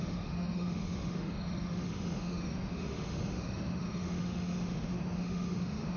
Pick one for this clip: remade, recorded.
remade